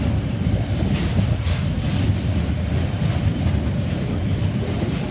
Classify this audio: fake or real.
real